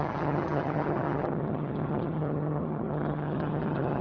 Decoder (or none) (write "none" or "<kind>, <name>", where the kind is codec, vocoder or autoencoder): vocoder, HiFi-GAN